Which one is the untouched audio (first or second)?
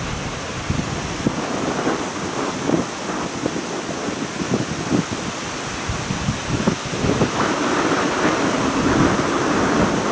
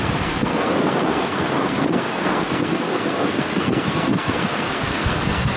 first